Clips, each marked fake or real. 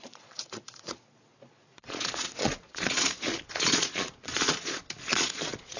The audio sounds fake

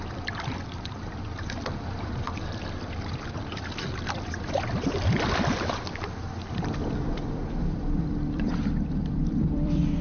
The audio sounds fake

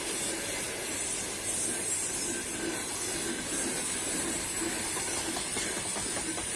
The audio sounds real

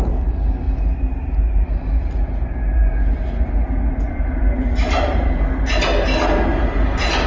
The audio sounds real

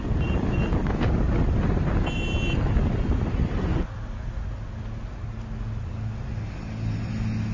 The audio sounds real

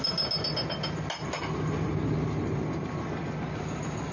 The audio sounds real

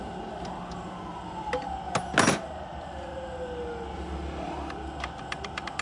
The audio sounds real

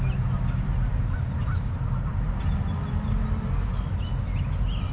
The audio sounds real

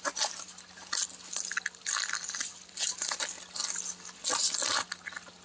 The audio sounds real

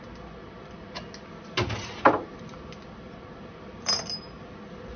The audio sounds real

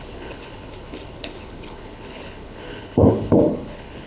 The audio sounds fake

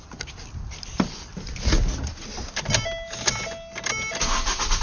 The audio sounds real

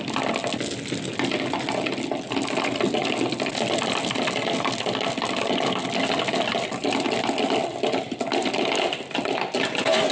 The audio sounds real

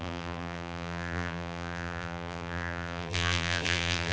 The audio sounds fake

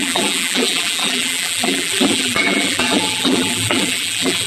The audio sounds fake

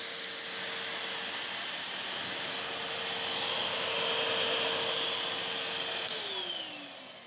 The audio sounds real